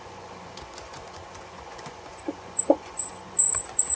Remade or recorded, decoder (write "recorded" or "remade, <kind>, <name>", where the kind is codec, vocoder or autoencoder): remade, vocoder, Vocos